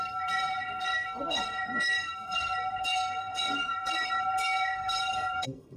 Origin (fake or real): fake